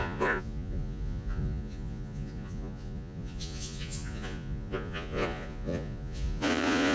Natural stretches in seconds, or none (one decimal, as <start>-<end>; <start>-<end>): none